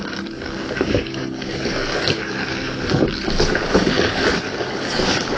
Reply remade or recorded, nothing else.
remade